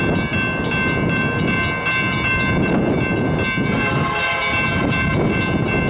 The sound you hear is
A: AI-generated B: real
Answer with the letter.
B